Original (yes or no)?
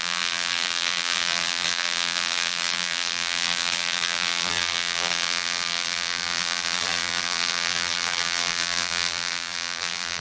no